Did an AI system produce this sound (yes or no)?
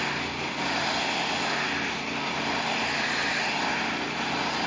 no